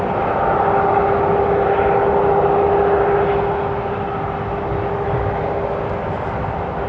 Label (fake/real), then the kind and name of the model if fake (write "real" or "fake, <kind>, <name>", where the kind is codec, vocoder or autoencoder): real